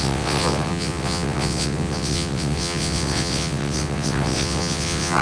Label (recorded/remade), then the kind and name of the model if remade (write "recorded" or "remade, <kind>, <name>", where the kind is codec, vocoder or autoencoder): remade, vocoder, WaveNeXt